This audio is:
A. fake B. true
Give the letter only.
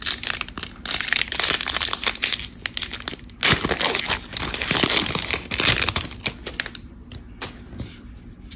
B